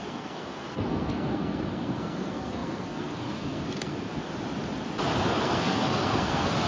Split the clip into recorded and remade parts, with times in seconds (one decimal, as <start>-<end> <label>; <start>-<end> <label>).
0.0-4.3 remade; 4.3-5.3 recorded; 5.3-6.7 remade